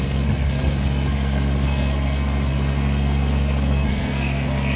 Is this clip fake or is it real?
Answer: fake